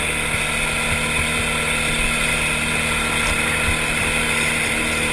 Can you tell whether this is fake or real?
real